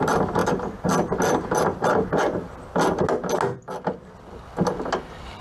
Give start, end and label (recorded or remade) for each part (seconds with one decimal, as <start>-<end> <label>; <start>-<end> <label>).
0.0-5.4 recorded